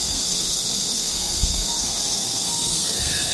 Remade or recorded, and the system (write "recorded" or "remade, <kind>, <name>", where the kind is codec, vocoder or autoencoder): remade, codec, SNAC